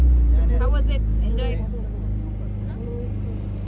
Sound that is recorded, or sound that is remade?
recorded